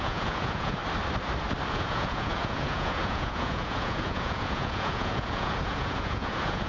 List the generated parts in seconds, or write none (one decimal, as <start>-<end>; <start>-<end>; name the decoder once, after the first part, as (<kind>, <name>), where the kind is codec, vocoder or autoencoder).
0.0-0.8 (vocoder, Vocos); 1.7-6.7